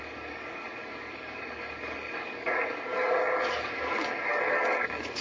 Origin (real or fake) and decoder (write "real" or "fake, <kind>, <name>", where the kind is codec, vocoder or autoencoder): fake, codec, DAC